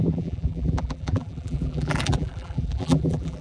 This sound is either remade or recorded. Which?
remade